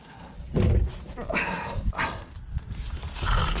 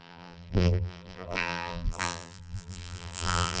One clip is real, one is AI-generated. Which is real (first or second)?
first